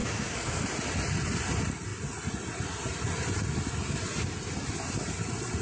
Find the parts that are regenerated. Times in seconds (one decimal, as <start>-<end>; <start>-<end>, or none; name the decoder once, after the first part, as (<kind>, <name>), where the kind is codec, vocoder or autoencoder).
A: 0.0-0.6 (codec, SNAC)